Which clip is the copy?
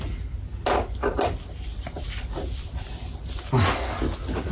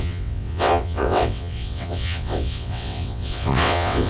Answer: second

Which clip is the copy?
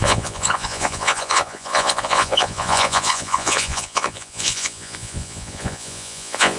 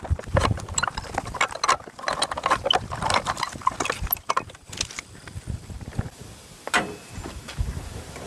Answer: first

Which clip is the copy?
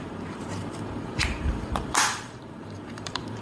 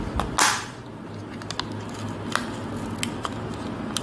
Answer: first